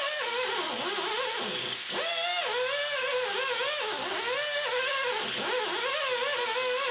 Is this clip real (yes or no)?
yes